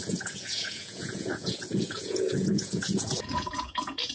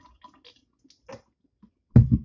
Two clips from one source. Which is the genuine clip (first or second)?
second